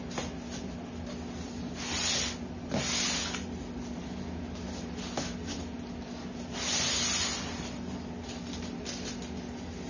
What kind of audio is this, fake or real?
real